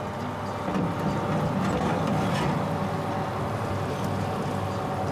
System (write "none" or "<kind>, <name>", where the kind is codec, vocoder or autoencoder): none